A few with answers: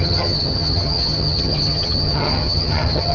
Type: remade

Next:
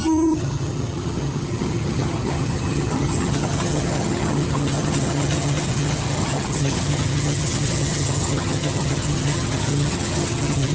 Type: remade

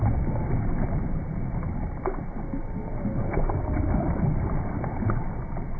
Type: recorded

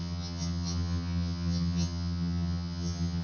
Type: remade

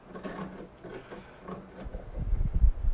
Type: recorded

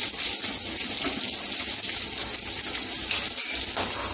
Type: recorded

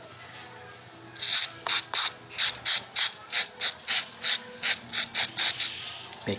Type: recorded